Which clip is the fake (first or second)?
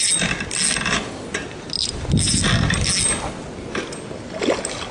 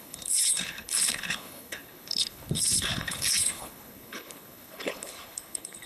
second